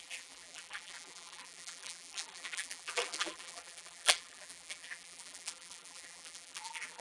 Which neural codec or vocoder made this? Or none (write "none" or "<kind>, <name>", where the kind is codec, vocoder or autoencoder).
vocoder, BigVGAN v2